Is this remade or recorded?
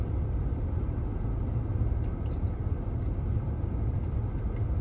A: recorded